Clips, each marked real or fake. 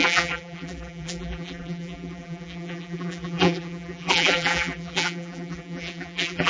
fake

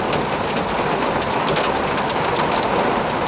real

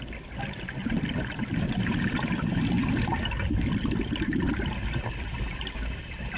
real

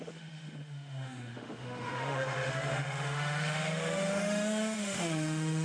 fake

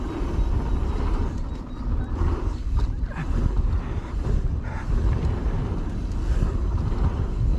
real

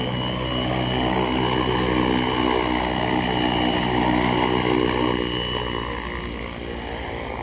real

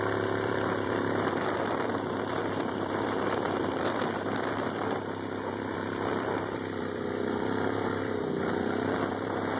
fake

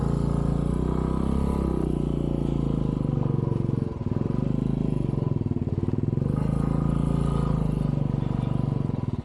real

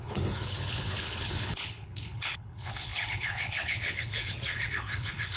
fake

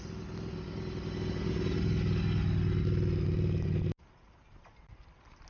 real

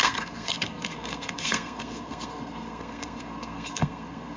fake